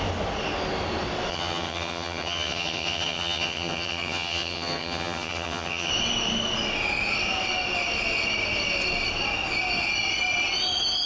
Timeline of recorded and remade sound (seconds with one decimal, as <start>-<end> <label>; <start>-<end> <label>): 0.0-1.3 recorded; 1.3-5.9 remade; 5.9-11.1 recorded